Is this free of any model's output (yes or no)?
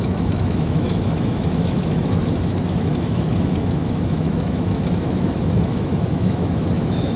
no